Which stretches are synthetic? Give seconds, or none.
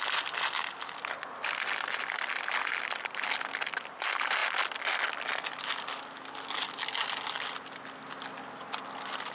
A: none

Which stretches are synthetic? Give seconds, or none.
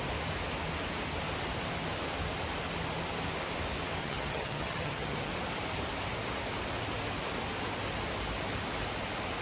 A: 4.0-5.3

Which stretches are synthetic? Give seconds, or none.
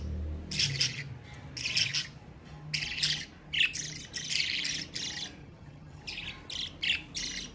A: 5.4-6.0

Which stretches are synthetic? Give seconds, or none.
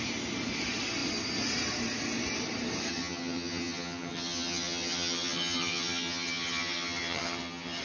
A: 2.9-7.8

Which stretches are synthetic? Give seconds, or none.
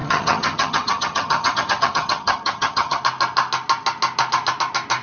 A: 0.0-3.0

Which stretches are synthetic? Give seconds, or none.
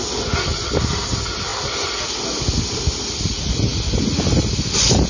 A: none